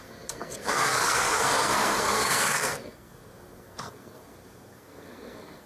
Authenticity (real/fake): fake